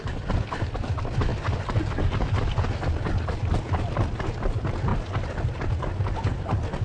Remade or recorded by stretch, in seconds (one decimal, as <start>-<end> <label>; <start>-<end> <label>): 0.0-6.8 recorded